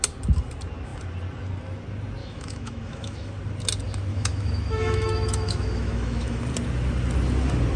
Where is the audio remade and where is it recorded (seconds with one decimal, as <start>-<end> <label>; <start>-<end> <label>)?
0.0-2.2 recorded; 2.2-3.3 remade; 3.3-4.1 recorded; 4.1-6.4 remade; 6.4-7.8 recorded